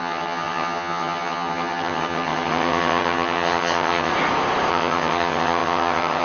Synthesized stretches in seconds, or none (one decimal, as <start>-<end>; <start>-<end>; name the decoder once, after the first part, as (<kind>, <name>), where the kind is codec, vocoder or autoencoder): 0.0-4.1 (vocoder, HiFi-GAN); 4.7-6.2